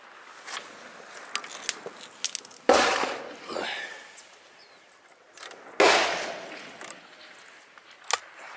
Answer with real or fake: real